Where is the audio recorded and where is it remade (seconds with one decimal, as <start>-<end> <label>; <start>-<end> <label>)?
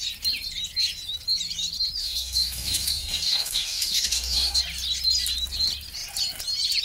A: 0.0-2.0 recorded; 2.0-4.6 remade; 4.6-6.8 recorded